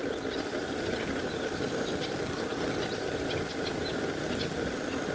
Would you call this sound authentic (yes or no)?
yes